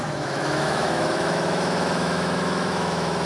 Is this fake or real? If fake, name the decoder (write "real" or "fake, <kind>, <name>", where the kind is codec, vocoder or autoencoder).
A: fake, autoencoder, DAC-VAE